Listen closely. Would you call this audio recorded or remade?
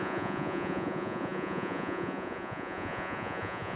remade